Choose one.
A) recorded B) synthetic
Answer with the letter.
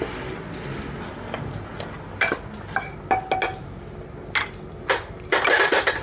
A